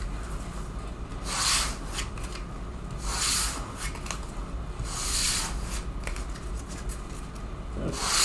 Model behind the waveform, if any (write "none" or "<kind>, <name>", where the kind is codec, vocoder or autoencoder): none